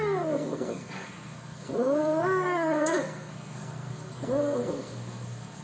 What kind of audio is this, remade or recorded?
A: remade